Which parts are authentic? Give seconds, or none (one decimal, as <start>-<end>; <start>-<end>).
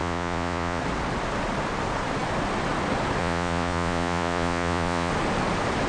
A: 0.8-3.2; 5.1-5.9